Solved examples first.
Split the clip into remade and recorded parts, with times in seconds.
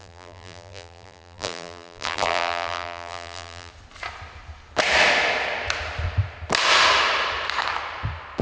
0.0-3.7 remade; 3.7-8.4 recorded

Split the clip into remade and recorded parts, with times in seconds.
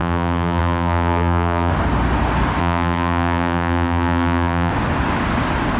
0.0-1.7 remade; 1.7-2.6 recorded; 2.6-4.7 remade; 4.7-5.8 recorded